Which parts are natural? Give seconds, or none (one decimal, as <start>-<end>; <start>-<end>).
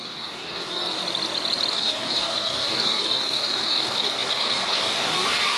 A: 1.0-1.7